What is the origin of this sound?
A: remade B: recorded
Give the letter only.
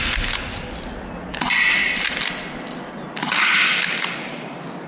B